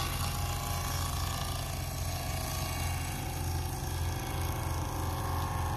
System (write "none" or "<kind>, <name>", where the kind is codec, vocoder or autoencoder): none